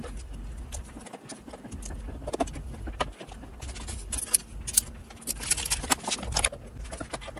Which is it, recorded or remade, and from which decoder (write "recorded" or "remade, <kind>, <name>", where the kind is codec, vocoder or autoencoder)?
recorded